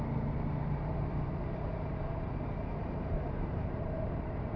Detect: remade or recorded remade